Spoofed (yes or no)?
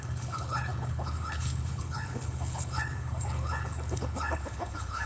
yes